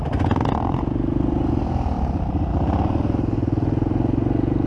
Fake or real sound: real